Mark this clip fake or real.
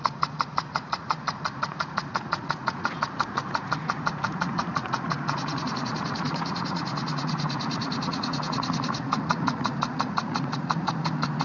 fake